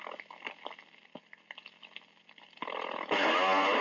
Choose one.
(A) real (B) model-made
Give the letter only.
A